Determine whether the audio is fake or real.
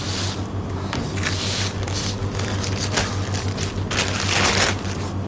real